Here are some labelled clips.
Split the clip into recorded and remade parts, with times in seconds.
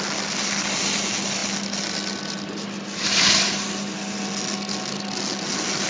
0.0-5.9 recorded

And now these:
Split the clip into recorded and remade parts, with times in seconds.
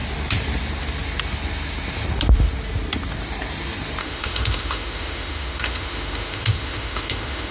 0.0-4.0 recorded; 4.0-7.5 remade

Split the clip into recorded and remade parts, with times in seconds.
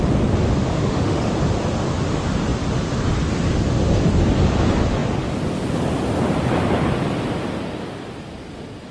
0.0-0.7 recorded; 0.7-1.3 remade; 1.3-8.9 recorded